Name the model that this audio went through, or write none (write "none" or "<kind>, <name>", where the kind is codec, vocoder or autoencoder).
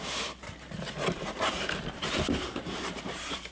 vocoder, BigVGAN v2